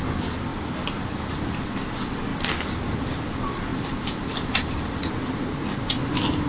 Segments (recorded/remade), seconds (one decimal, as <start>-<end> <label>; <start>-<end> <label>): 0.0-0.5 recorded; 0.5-1.4 remade; 1.4-3.7 recorded; 3.7-5.1 remade; 5.1-6.5 recorded